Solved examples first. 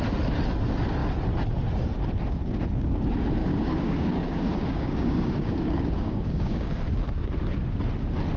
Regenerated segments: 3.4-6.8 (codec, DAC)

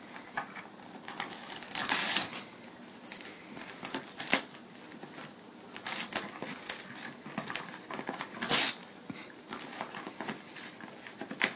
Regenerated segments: none